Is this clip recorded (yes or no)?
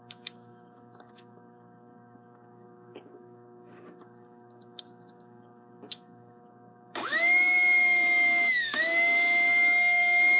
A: no